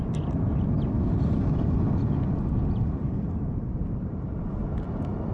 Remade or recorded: recorded